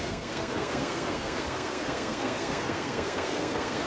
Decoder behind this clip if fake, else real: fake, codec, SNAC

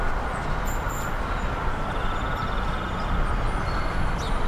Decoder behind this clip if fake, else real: real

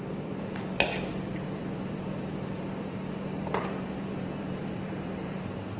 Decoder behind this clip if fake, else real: fake, vocoder, BigVGAN v2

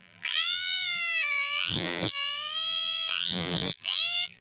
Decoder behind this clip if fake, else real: fake, vocoder, BigVGAN v2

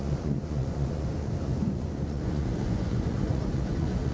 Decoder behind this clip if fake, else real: fake, vocoder, Vocos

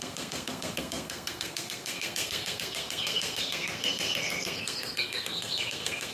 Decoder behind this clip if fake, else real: fake, codec, SNAC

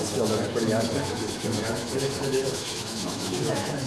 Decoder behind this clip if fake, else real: fake, autoencoder, DAC-VAE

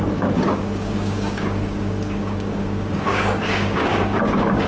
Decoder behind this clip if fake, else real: fake, codec, DAC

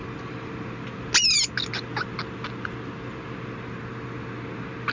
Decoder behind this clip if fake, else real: real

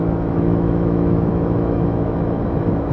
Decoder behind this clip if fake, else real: fake, autoencoder, DAC-VAE